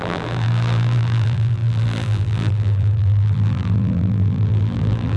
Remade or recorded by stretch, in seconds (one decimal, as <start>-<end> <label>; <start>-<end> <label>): 0.0-5.2 remade